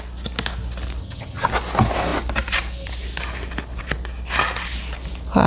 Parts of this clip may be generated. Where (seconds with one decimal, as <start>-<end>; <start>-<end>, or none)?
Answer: 1.0-1.5